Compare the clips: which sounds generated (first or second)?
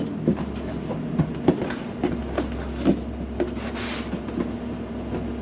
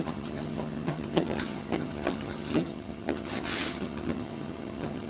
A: second